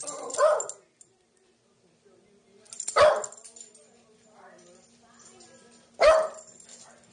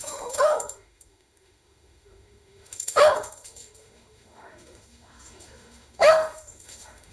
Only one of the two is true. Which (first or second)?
first